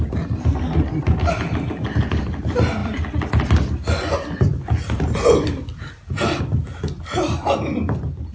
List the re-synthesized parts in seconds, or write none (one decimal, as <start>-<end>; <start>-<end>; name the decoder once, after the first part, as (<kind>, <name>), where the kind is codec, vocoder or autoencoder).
none